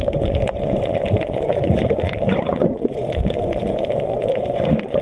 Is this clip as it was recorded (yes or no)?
no